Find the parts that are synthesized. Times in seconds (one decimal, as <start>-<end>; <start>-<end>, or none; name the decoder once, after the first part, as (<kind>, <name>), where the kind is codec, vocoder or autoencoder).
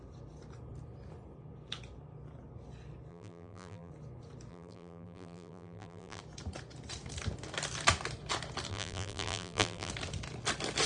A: 3.1-3.9 (vocoder, BigVGAN v2); 4.5-6.2; 8.7-9.9